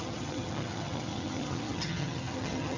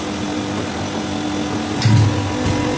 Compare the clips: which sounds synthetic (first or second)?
first